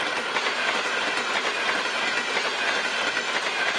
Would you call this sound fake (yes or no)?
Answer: no